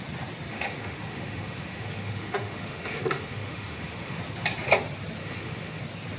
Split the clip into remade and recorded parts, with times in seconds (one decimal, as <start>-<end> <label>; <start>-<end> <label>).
0.0-0.5 recorded; 0.5-4.2 remade; 4.2-5.2 recorded; 5.2-5.8 remade; 5.8-6.2 recorded